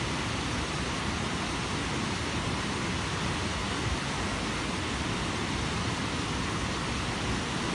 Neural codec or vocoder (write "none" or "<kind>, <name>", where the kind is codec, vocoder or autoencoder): none